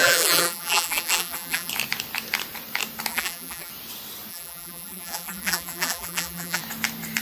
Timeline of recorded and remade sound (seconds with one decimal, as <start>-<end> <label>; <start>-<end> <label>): 0.0-1.7 remade; 1.7-3.1 recorded; 3.1-3.7 remade; 3.7-4.3 recorded; 4.3-6.6 remade; 6.6-7.2 recorded